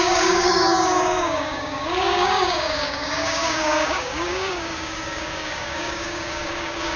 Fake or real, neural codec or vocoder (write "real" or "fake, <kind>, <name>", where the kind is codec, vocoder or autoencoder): fake, codec, DAC